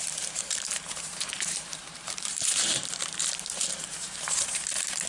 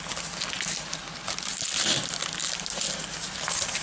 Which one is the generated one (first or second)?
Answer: first